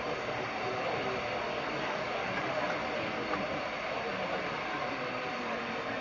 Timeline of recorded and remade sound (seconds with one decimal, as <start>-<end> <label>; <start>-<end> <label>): 0.0-1.5 recorded; 1.5-2.5 remade; 2.5-6.0 recorded